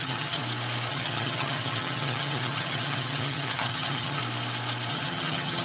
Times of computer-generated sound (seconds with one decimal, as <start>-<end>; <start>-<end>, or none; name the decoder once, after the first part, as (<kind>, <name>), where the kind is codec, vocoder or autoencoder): 0.0-0.4 (vocoder, HiFi-GAN); 0.9-4.2; 4.9-5.6